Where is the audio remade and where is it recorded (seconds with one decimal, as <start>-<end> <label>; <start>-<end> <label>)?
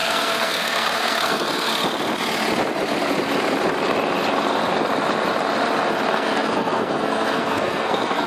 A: 0.0-1.7 remade; 1.7-6.1 recorded; 6.1-8.3 remade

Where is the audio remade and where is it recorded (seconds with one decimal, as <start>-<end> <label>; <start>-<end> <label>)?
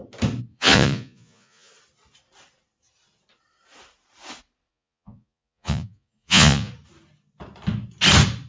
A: 0.0-0.5 recorded; 0.5-1.7 remade; 1.7-4.7 recorded; 4.7-6.7 remade; 6.7-8.5 recorded